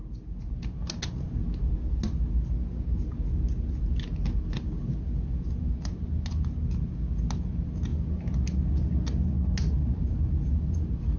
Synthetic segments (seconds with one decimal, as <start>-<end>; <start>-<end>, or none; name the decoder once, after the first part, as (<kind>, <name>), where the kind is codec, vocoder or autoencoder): none